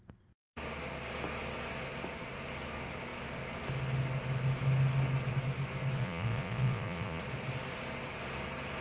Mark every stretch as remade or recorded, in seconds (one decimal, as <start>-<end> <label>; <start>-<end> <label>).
0.0-6.0 recorded; 6.0-7.2 remade; 7.2-8.8 recorded